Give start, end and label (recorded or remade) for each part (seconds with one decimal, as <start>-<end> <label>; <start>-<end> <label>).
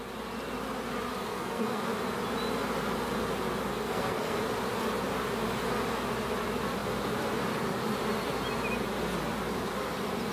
0.0-1.3 recorded; 1.3-1.8 remade; 1.8-3.7 recorded; 3.7-4.4 remade; 4.4-10.3 recorded